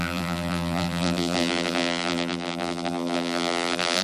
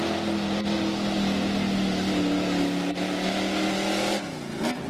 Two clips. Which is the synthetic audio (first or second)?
first